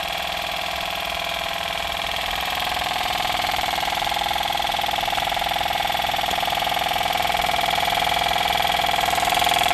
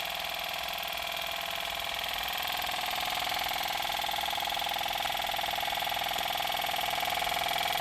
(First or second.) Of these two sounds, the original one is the second